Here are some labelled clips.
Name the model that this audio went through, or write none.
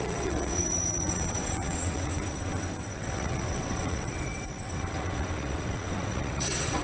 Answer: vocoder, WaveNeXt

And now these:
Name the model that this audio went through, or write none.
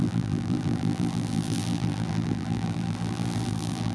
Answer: vocoder, BigVGAN v2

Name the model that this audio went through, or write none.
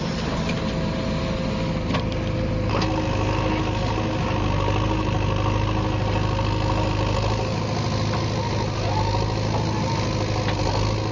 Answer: none